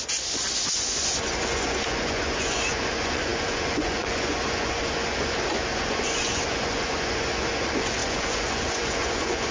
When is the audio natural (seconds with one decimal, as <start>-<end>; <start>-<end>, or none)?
none